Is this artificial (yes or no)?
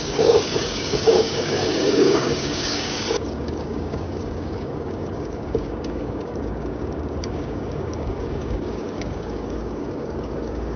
yes